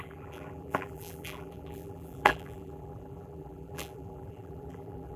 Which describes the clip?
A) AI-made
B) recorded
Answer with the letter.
A